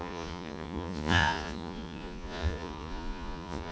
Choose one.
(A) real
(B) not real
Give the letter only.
B